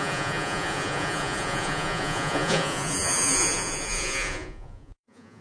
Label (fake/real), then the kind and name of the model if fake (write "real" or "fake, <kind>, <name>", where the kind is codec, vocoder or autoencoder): fake, vocoder, Vocos